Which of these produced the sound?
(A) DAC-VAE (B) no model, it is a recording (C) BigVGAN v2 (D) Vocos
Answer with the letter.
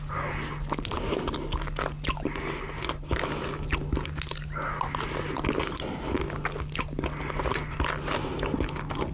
B